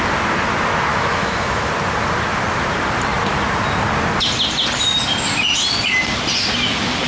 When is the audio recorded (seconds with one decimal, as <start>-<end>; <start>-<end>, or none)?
0.0-0.9; 1.7-7.1